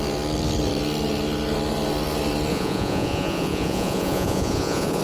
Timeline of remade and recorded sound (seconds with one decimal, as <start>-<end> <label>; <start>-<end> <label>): 0.0-2.5 recorded; 2.5-5.0 remade